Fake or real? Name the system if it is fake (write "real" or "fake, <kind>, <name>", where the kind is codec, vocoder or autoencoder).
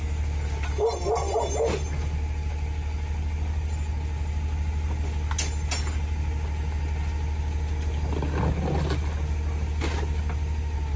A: real